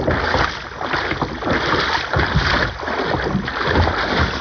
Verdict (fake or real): real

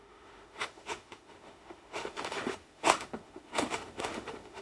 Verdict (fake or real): fake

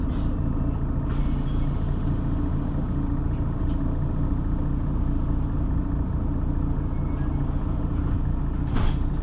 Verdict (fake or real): real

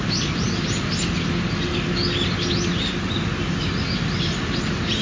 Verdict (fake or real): real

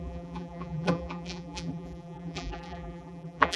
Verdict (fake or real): fake